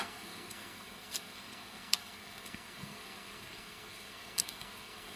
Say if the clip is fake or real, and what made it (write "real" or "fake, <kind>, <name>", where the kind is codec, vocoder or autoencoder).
fake, codec, SNAC